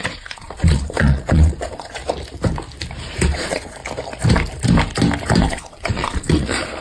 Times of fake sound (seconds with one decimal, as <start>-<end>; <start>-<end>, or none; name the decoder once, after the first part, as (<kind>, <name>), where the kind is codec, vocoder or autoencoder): 0.0-2.0 (vocoder, Vocos); 3.3-3.8; 5.4-6.8